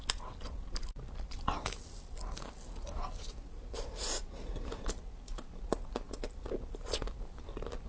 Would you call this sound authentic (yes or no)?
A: yes